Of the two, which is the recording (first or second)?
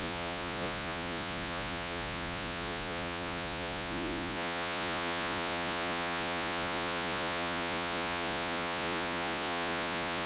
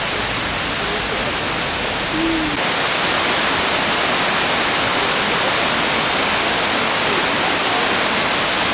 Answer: second